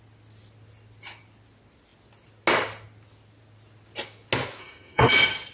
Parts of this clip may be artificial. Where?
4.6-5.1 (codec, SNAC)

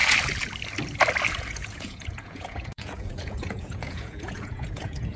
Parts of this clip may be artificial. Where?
1.3-5.2 (vocoder, Vocos)

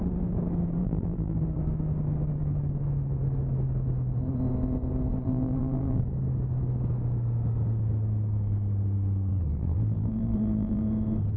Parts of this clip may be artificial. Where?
0.8-1.4 (vocoder, BigVGAN v2); 5.1-6.0; 9.3-10.8

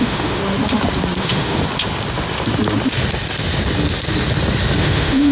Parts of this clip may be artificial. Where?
0.0-0.4 (autoencoder, DAC-VAE); 1.2-1.6; 4.8-5.3

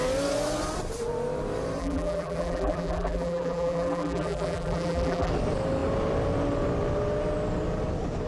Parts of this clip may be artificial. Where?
1.8-5.3 (vocoder, BigVGAN v2)

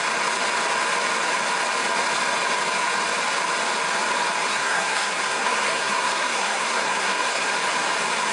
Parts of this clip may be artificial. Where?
4.5-7.5 (codec, SNAC)

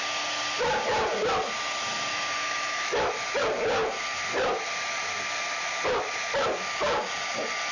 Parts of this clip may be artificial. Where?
2.1-3.4 (autoencoder, DAC-VAE)